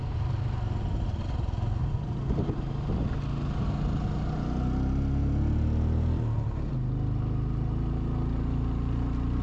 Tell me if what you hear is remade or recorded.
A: recorded